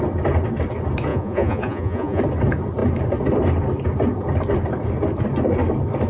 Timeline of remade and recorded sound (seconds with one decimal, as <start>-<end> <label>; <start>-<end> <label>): 0.0-1.1 recorded; 1.1-2.2 remade; 2.2-6.1 recorded